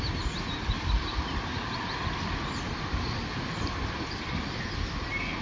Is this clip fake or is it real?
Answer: real